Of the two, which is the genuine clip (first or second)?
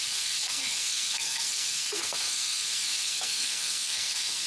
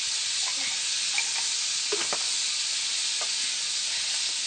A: second